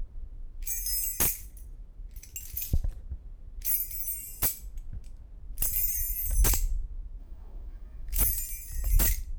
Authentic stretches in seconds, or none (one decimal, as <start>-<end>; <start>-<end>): 0.0-7.2; 8.2-9.4